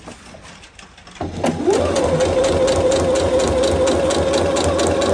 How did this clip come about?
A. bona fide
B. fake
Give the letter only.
A